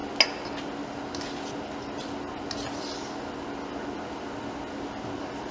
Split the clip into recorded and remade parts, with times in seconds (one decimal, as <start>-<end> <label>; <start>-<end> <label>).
0.0-5.5 recorded